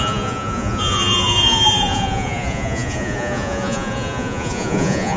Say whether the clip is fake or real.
fake